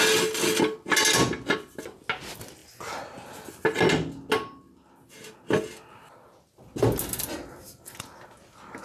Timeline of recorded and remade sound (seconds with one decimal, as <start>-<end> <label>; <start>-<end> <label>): 0.0-8.8 recorded